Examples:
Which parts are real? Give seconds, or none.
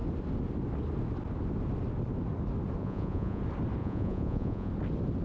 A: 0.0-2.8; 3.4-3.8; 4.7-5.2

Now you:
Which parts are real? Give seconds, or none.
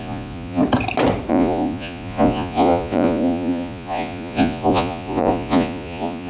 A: 0.6-1.3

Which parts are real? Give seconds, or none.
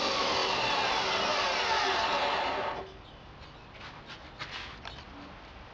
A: 0.0-5.7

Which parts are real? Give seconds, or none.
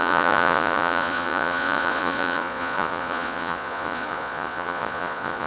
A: none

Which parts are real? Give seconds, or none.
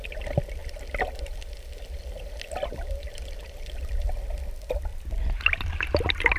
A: 0.0-6.4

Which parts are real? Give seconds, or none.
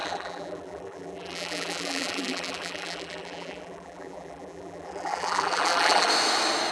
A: 6.1-6.7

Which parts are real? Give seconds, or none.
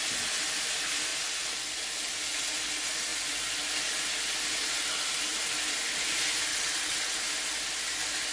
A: 0.0-6.5; 7.2-8.3